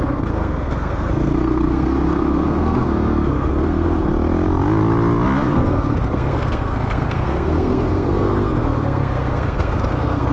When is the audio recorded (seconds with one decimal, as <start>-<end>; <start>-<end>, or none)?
4.1-5.5